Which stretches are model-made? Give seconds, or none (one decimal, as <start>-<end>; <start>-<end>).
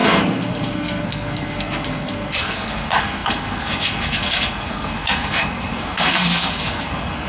0.0-7.3